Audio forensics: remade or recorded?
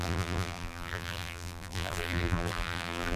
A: remade